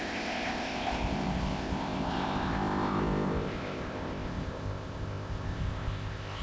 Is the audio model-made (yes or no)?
yes